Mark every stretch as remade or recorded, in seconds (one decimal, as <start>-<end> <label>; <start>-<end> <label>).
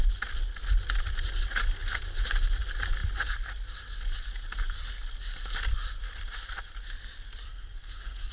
0.0-7.5 recorded; 7.5-8.3 remade